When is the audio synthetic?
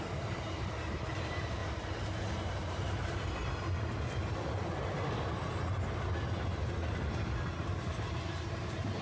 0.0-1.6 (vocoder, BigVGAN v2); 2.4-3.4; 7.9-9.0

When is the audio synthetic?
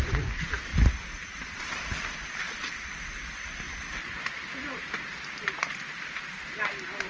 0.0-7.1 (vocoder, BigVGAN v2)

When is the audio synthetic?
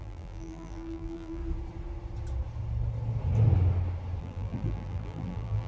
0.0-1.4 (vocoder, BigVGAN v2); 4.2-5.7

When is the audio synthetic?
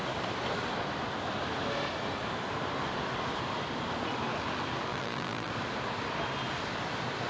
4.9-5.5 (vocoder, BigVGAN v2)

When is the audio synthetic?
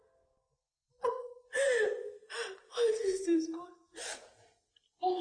none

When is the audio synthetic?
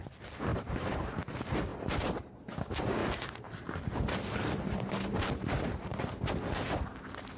0.5-1.1 (vocoder, BigVGAN v2); 1.7-2.3; 3.0-6.0